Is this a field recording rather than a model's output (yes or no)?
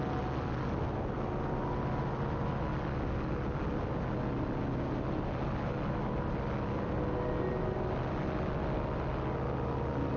yes